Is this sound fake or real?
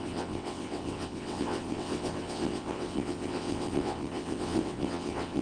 fake